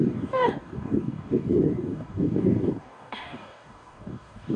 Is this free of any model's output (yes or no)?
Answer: no